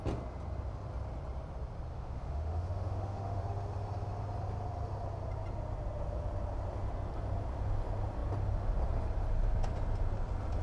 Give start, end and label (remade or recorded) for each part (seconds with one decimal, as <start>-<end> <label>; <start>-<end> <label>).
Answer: 0.0-1.9 recorded; 1.9-3.4 remade; 3.4-10.6 recorded

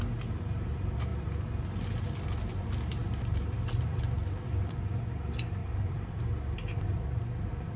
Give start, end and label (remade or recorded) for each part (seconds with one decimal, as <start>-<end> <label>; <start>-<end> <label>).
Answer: 0.0-3.0 recorded; 3.0-4.0 remade; 4.0-5.6 recorded; 5.6-6.2 remade; 6.2-7.8 recorded